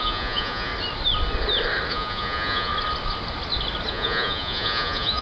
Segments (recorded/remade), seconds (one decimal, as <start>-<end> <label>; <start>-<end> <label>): 0.0-0.7 remade; 0.7-1.9 recorded; 1.9-2.7 remade; 2.7-3.9 recorded; 3.9-5.2 remade